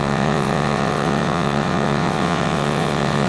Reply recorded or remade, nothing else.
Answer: remade